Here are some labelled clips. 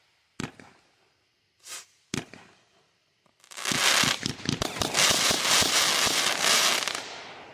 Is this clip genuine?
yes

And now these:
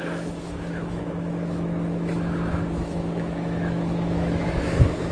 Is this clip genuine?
no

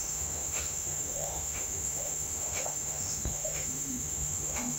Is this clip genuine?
no